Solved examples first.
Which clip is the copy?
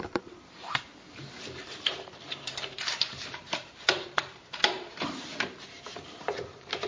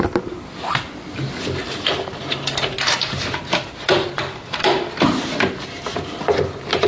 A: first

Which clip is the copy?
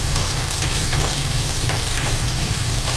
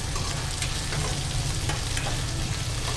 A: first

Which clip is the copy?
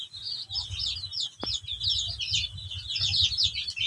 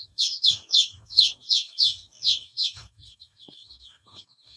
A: second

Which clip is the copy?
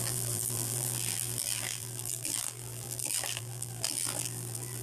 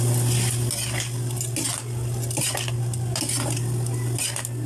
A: first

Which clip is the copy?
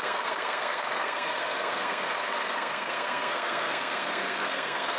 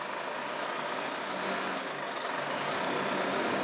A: first